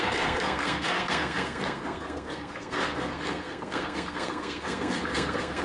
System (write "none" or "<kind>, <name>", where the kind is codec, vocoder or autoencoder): codec, SNAC